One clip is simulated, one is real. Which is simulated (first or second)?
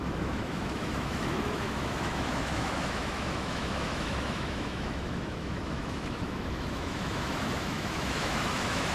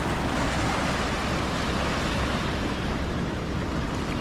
first